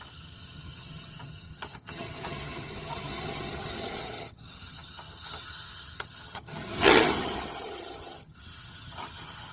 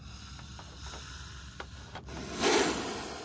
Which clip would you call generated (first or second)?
first